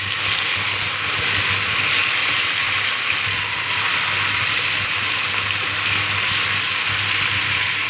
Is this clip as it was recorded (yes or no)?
yes